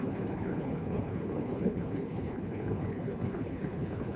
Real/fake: fake